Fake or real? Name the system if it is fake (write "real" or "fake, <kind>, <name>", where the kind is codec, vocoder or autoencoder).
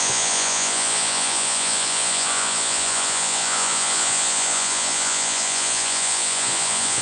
fake, vocoder, Vocos